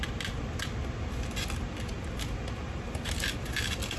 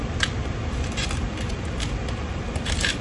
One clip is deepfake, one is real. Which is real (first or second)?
first